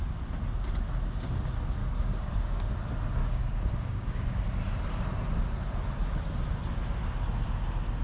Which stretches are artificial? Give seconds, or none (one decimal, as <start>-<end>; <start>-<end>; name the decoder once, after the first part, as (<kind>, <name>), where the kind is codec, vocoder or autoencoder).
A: 1.8-2.7 (codec, DAC); 3.2-4.4